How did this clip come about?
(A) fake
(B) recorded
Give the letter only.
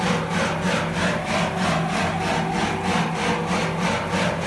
B